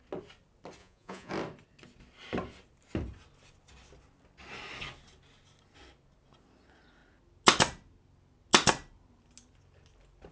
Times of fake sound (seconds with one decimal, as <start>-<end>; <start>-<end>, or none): 0.8-1.3